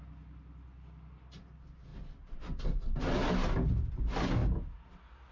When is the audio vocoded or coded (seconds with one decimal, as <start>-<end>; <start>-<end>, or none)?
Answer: 1.9-2.4